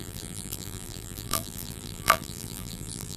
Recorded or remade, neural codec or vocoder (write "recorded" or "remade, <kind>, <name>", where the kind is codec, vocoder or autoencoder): remade, vocoder, BigVGAN v2